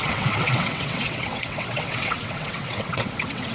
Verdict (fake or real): fake